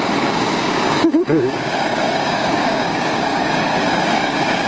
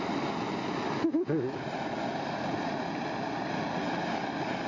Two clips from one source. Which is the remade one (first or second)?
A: first